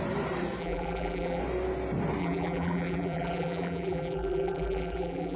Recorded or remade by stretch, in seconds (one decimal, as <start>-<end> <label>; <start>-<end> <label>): 0.0-0.6 recorded; 0.6-1.4 remade; 1.4-2.2 recorded; 2.2-5.4 remade